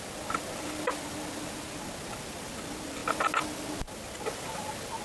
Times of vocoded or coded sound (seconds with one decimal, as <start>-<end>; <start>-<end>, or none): 0.0-3.0